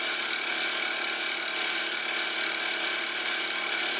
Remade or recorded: recorded